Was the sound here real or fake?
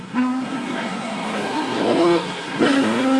fake